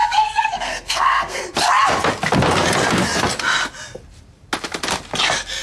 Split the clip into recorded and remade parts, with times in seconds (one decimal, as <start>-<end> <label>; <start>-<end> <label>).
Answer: 0.0-1.4 remade; 1.4-5.6 recorded